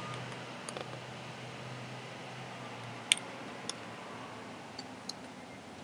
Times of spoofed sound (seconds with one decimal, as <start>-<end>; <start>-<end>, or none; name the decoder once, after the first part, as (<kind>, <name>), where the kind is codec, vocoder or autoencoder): none